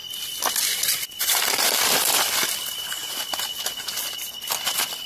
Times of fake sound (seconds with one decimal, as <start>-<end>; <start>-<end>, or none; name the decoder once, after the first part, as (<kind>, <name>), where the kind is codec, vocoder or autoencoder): 1.2-3.0 (vocoder, BigVGAN v2); 3.9-5.1

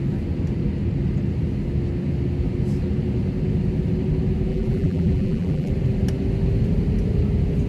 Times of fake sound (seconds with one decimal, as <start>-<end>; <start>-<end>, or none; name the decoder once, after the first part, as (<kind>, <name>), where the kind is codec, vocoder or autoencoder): 4.5-5.7 (vocoder, BigVGAN v2)

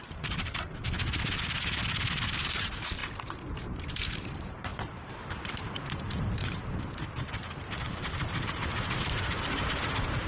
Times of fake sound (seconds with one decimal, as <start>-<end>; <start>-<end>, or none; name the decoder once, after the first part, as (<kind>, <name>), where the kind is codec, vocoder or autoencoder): 0.0-0.8 (vocoder, BigVGAN v2); 2.1-3.0; 3.5-10.3

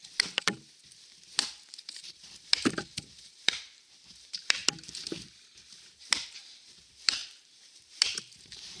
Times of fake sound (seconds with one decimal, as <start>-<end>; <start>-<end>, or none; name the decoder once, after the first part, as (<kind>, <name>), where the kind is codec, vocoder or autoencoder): 2.0-4.6 (vocoder, BigVGAN v2); 5.6-8.8

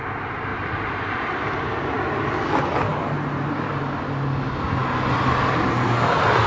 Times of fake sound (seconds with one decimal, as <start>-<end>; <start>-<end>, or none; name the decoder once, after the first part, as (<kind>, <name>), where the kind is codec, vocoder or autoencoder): 0.5-1.8 (vocoder, BigVGAN v2); 4.8-6.5